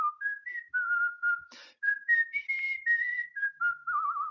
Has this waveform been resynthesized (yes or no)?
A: no